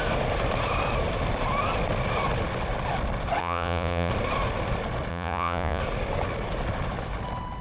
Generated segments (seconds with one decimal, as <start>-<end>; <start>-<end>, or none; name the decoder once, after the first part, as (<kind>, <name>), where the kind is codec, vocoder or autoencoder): 3.4-4.1 (vocoder, Vocos); 5.1-5.8